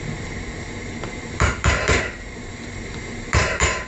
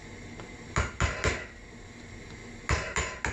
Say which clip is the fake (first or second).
first